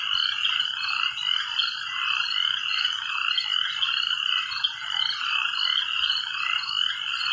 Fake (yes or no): no